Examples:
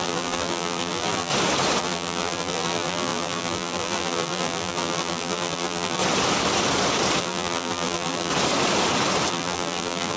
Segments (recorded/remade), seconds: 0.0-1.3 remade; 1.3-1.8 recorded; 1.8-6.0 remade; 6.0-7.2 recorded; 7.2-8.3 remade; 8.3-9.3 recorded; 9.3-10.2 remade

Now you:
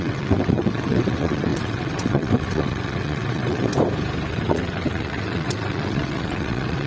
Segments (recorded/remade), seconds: 0.0-3.7 remade; 3.7-4.3 recorded; 4.3-6.9 remade

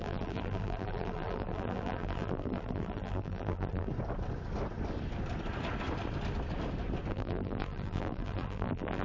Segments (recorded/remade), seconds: 0.0-3.9 remade; 3.9-7.1 recorded; 7.1-9.0 remade

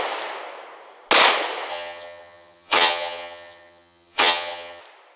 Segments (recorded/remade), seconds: 0.0-1.7 recorded; 1.7-4.8 remade; 4.8-5.2 recorded